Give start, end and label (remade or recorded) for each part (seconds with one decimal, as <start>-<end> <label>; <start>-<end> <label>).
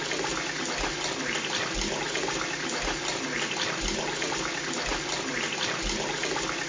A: 0.0-6.7 recorded